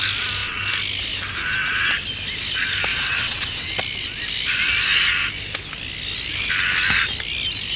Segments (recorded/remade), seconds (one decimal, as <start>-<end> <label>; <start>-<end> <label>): 0.0-2.9 recorded; 2.9-3.7 remade; 3.7-7.8 recorded